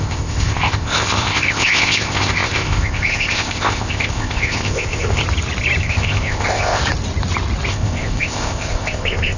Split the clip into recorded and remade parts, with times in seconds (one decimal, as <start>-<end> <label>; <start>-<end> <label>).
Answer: 0.0-5.2 remade; 5.2-5.8 recorded; 5.8-6.8 remade; 6.8-7.7 recorded; 7.7-9.4 remade